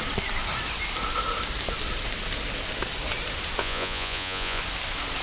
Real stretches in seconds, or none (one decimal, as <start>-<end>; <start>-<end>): 0.0-3.6; 4.6-5.2